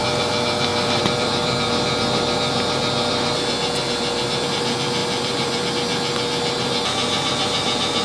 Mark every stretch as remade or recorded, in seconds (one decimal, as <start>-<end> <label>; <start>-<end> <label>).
0.0-0.7 recorded; 0.7-1.6 remade; 1.6-5.0 recorded; 5.0-5.7 remade; 5.7-8.0 recorded